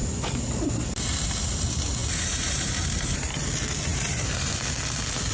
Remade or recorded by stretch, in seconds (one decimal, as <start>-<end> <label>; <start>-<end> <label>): 0.0-0.5 remade; 0.5-2.0 recorded; 2.0-3.5 remade; 3.5-3.9 recorded; 3.9-4.5 remade; 4.5-5.3 recorded